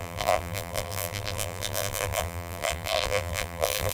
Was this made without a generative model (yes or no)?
no